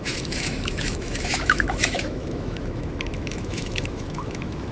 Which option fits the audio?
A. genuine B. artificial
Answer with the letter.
B